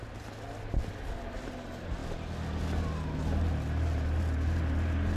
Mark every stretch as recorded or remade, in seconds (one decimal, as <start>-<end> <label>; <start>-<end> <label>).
0.0-5.2 recorded